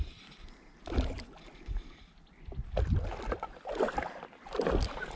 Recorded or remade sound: recorded